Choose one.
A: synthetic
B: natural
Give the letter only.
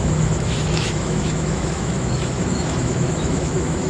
A